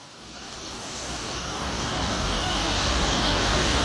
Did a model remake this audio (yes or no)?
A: yes